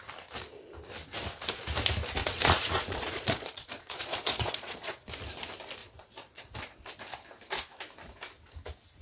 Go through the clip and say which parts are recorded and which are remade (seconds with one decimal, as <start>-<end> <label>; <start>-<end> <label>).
0.0-2.2 recorded; 2.2-5.1 remade; 5.1-5.8 recorded; 5.8-6.4 remade; 6.4-9.0 recorded